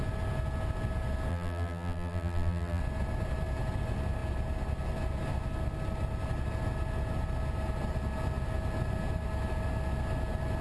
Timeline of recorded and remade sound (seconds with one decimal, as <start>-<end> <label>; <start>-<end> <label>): 0.0-1.3 recorded; 1.3-2.8 remade; 2.8-10.6 recorded